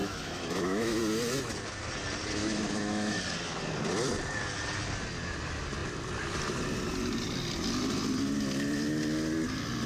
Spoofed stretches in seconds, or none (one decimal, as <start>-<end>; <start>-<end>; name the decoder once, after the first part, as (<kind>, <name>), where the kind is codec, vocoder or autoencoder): 0.0-1.0 (autoencoder, DAC-VAE); 2.4-3.2